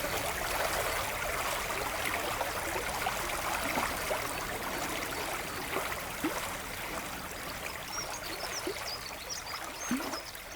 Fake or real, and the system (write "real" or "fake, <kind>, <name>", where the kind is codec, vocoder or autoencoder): real